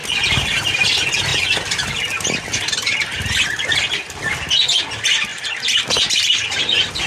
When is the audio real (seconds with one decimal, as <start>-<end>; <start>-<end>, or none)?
0.0-7.1